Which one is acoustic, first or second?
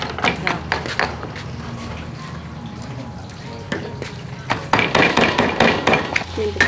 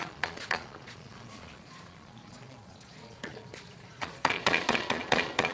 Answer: first